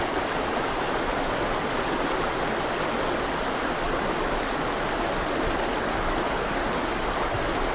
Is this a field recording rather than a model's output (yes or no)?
yes